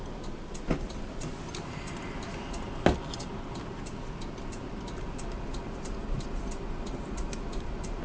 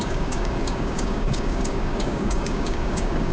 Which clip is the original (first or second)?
first